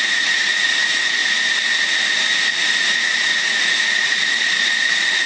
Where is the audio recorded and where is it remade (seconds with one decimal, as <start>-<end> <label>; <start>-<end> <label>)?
0.0-1.2 remade; 1.2-2.7 recorded; 2.7-5.3 remade